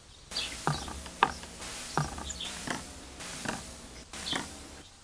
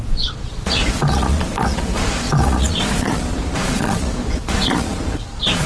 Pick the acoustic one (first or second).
first